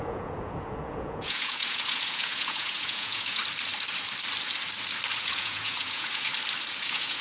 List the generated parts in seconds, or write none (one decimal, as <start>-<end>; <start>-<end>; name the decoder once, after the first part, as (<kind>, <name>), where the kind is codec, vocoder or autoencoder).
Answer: 0.0-3.4 (vocoder, Vocos); 5.2-6.3; 6.8-7.2